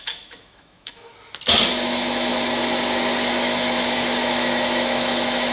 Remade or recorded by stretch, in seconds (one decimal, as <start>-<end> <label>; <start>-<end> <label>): 0.0-1.1 remade; 1.1-1.7 recorded; 1.7-2.3 remade; 2.3-3.3 recorded; 3.3-5.5 remade